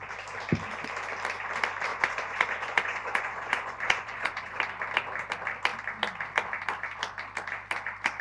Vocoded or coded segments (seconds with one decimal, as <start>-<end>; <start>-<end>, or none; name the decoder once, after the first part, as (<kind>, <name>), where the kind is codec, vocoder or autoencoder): 1.9-4.6 (vocoder, Vocos)

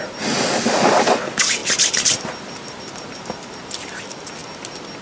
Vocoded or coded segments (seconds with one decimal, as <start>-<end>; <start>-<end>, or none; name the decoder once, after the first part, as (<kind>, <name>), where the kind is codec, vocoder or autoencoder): none

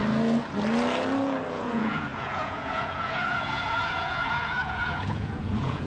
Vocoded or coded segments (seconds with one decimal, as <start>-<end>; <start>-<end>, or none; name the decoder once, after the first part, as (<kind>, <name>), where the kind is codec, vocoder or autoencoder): 1.5-5.9 (vocoder, Vocos)

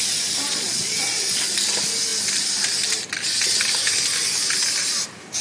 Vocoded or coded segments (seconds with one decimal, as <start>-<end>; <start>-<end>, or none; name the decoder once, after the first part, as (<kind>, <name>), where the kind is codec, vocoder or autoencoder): 0.5-1.5 (vocoder, Vocos)

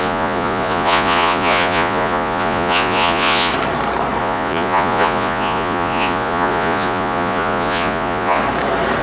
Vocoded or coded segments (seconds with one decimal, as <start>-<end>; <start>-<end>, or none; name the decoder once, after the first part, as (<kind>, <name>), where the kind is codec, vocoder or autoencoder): 0.0-3.5 (vocoder, Vocos); 4.2-8.4

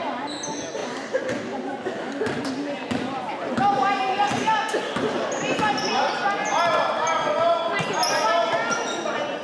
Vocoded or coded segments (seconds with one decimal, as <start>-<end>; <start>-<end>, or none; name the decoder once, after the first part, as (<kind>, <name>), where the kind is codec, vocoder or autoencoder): none